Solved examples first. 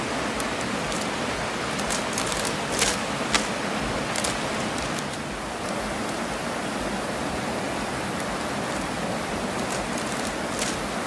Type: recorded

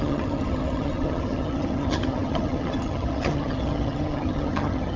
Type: remade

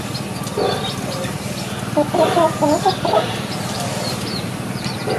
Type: recorded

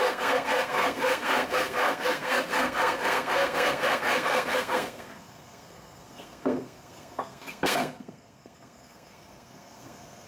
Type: remade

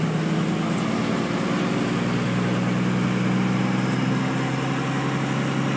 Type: recorded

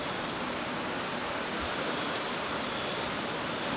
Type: recorded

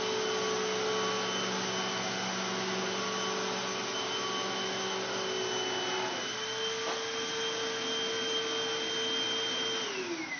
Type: recorded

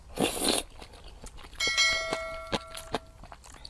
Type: recorded